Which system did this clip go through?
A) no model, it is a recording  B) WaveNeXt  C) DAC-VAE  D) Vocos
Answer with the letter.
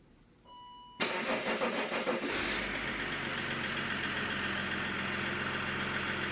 A